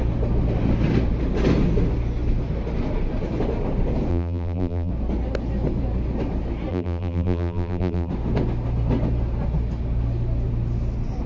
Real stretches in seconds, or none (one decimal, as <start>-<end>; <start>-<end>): 0.0-4.1; 4.9-6.7; 8.1-11.3